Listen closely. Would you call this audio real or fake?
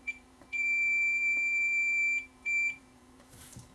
fake